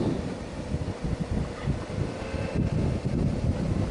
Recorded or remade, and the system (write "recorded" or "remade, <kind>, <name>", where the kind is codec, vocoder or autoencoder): recorded